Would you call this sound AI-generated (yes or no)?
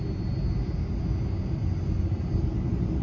no